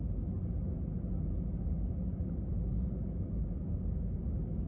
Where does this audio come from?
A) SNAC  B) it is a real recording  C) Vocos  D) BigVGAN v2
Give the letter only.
B